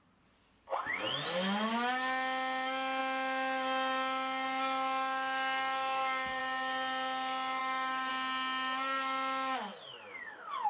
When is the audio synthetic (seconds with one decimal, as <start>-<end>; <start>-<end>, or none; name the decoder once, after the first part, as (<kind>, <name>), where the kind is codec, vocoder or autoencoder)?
7.6-8.1 (autoencoder, DAC-VAE)